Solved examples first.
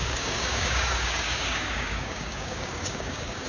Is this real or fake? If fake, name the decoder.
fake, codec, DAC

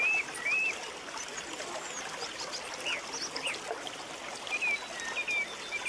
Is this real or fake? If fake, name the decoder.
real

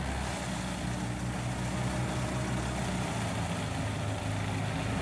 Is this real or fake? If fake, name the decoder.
real